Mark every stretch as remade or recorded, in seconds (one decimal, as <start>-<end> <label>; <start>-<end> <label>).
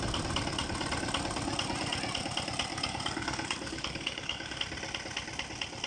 0.0-2.7 recorded; 2.7-4.6 remade; 4.6-5.9 recorded